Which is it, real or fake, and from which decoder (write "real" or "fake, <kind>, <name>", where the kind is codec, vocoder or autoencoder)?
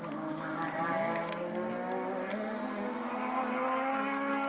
real